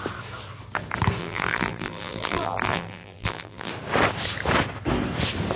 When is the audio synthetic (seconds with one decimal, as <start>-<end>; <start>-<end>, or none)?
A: 1.2-3.7